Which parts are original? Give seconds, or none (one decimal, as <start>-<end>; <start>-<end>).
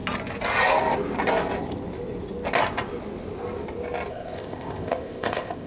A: 0.0-4.1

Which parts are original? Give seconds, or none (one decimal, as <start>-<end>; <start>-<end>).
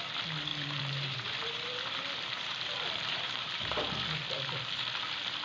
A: 0.0-0.5; 3.7-5.4